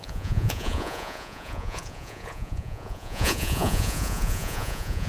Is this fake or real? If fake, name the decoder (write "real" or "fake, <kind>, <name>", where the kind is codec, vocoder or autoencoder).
fake, vocoder, Vocos